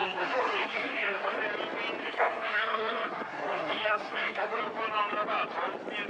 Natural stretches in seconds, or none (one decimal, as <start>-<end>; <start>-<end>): 1.4-2.0; 4.6-6.1